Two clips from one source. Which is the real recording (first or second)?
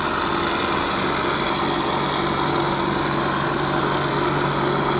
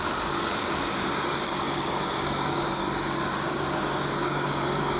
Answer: first